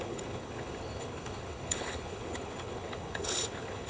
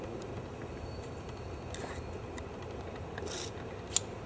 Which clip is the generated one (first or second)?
first